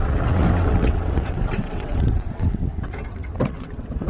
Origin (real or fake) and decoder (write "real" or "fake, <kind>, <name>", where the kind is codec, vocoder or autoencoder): fake, vocoder, WaveNeXt